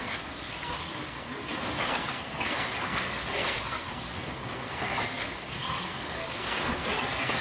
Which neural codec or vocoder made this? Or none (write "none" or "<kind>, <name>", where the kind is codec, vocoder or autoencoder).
codec, SNAC